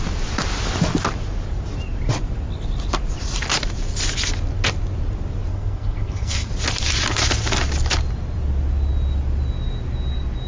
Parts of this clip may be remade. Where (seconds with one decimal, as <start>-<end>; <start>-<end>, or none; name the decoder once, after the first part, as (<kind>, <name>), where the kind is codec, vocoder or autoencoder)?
5.5-6.5 (codec, SNAC)